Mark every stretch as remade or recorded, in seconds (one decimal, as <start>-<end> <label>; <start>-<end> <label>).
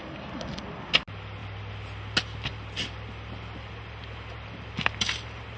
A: 0.0-5.6 recorded